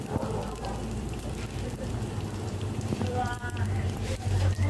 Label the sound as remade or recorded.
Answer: remade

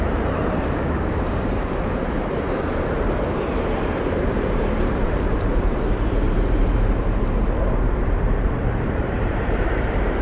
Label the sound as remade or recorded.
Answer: remade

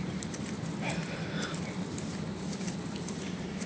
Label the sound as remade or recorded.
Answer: recorded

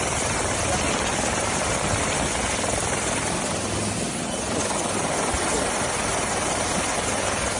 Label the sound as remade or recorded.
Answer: recorded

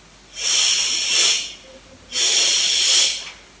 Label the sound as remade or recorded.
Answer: recorded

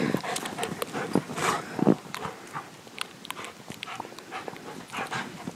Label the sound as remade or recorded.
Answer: remade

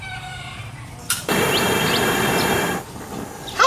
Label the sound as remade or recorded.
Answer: remade